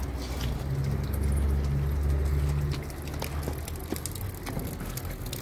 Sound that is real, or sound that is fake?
real